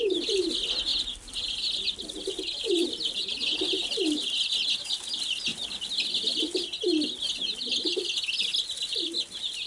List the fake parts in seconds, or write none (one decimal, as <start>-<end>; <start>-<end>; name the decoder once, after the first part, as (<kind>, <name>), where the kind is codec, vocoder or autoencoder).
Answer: none